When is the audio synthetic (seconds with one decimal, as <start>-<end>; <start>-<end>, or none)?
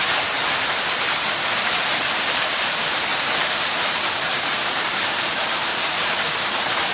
0.0-0.4; 1.6-5.7; 6.4-6.9